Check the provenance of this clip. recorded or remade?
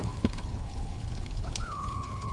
remade